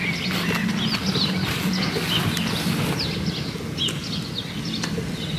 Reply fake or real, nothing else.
real